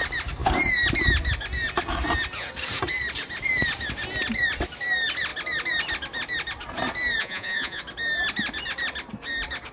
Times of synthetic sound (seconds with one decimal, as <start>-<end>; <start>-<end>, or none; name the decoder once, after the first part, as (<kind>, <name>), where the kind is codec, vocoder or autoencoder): 7.2-7.8 (vocoder, Vocos)